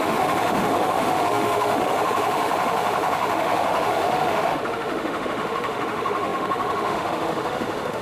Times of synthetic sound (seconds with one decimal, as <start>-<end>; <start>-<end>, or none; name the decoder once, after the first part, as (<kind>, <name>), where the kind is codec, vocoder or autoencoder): 0.0-8.0 (autoencoder, DAC-VAE)